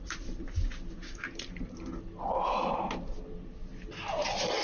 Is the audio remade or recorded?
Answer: recorded